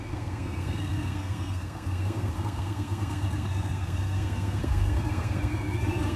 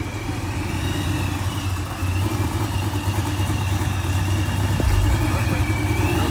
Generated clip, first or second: first